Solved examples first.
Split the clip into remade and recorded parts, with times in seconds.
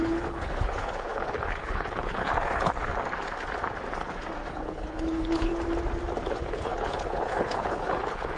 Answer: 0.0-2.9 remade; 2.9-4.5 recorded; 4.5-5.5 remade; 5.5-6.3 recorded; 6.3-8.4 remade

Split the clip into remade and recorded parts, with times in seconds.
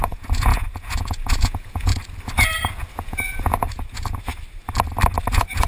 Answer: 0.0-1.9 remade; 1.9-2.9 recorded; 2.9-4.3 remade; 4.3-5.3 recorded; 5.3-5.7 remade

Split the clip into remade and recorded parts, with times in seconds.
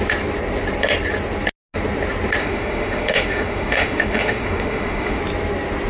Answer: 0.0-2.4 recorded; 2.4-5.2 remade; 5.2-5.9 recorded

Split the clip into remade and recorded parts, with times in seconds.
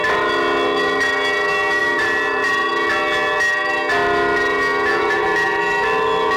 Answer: 0.0-1.8 recorded; 1.8-2.7 remade; 2.7-4.9 recorded; 4.9-5.6 remade; 5.6-6.4 recorded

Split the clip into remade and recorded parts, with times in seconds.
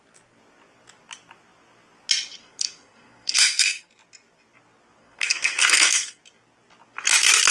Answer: 0.0-2.4 recorded; 2.4-3.9 remade; 3.9-5.0 recorded; 5.0-6.2 remade; 6.2-7.5 recorded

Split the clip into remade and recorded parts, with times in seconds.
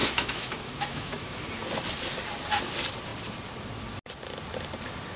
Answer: 0.0-1.4 remade; 1.4-5.2 recorded